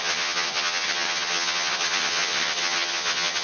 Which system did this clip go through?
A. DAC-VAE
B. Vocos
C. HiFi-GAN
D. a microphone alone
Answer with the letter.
C